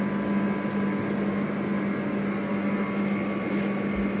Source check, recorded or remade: recorded